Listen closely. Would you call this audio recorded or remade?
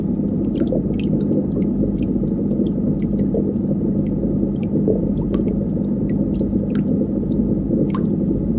recorded